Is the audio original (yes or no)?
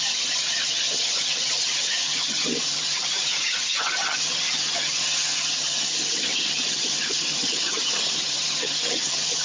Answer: no